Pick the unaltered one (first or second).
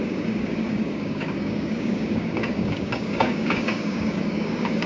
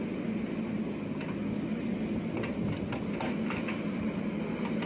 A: second